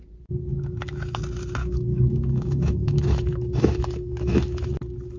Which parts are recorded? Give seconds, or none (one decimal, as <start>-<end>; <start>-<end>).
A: 0.0-0.5; 1.2-1.6; 4.7-5.2